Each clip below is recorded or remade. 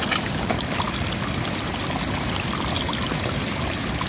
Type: recorded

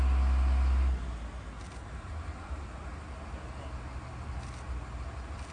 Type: recorded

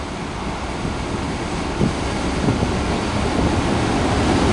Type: recorded